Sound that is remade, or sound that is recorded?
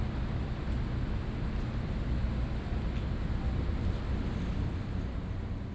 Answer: recorded